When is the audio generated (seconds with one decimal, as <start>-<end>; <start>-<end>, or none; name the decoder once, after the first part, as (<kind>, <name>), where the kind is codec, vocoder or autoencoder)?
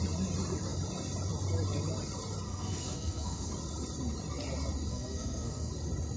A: 2.5-3.5 (codec, SNAC); 4.9-5.7